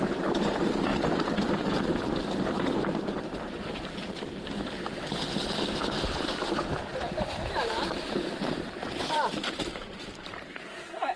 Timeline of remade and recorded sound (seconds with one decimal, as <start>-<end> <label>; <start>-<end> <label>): 0.0-0.9 remade; 0.9-1.7 recorded; 1.7-5.2 remade; 5.2-6.2 recorded; 6.2-11.2 remade